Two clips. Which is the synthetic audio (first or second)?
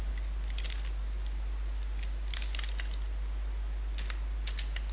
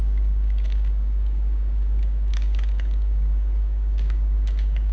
second